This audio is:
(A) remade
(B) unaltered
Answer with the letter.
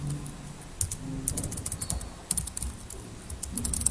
B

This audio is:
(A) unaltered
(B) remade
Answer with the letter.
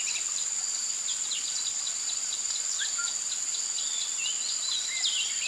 A